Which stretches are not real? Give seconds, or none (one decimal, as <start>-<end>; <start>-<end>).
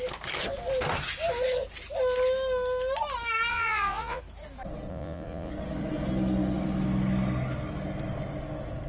3.5-4.2; 4.9-5.5